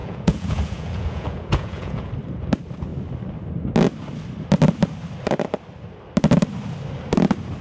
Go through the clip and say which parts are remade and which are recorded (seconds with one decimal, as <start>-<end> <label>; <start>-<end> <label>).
0.0-2.1 remade; 2.1-7.6 recorded